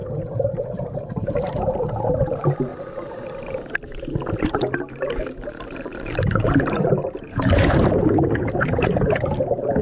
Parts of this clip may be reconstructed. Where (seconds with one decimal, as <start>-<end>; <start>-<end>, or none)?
0.5-2.7; 4.4-9.8